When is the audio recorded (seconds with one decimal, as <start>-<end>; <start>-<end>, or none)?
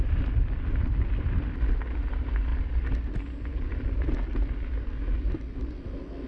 0.0-6.3